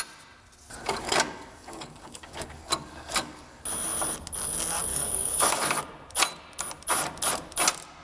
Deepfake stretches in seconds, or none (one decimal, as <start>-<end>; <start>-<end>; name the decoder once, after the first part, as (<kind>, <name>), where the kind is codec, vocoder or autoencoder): 0.8-3.6 (codec, DAC); 4.9-5.8